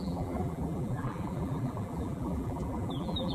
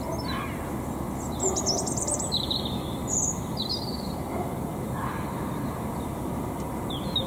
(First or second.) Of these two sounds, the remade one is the first